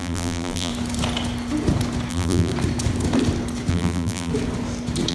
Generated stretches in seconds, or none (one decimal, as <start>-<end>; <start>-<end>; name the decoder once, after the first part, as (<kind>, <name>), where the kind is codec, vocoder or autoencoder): 0.0-0.7 (vocoder, BigVGAN v2); 2.1-2.5; 3.7-4.3